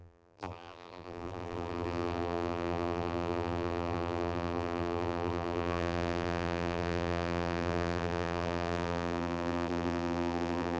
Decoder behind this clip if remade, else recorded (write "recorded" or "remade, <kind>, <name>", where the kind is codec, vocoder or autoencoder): remade, vocoder, BigVGAN v2